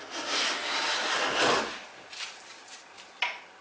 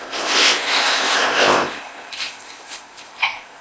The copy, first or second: second